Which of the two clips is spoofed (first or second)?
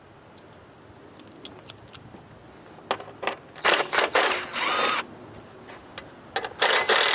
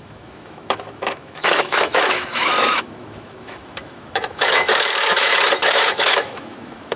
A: second